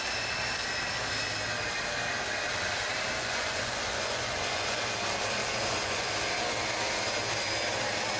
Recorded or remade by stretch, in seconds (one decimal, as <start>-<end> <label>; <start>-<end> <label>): 0.0-3.2 recorded; 3.2-4.8 remade; 4.8-5.4 recorded; 5.4-6.1 remade; 6.1-8.2 recorded